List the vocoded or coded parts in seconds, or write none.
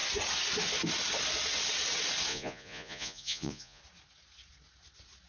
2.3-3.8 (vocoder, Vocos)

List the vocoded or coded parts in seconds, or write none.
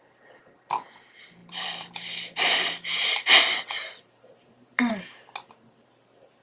1.4-5.2 (vocoder, BigVGAN v2)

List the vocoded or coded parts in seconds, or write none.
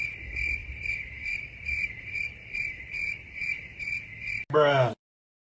0.6-3.8 (vocoder, BigVGAN v2)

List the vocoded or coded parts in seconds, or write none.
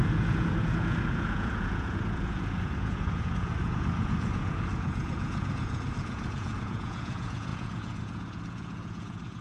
0.0-9.4 (vocoder, Vocos)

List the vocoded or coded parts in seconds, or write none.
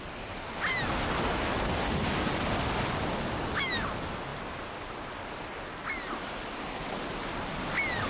none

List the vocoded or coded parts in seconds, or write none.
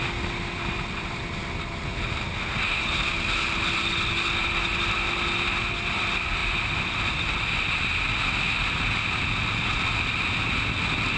none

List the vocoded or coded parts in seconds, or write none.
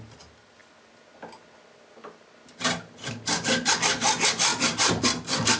none